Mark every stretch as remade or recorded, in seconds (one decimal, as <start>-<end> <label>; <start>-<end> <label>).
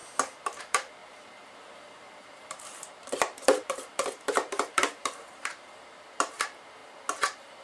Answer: 0.0-0.6 recorded; 0.6-6.8 remade; 6.8-7.6 recorded